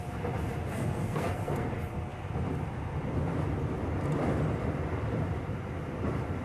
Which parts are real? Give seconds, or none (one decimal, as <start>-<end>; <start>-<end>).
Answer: 0.0-0.7; 1.7-6.4